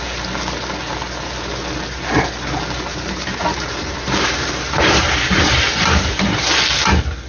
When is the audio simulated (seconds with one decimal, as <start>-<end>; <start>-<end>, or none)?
2.9-6.6